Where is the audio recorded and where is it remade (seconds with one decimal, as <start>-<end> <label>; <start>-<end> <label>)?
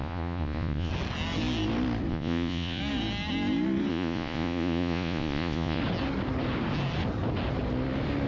0.0-0.9 remade; 0.9-2.1 recorded; 2.1-2.8 remade; 2.8-3.9 recorded; 3.9-5.8 remade; 5.8-8.3 recorded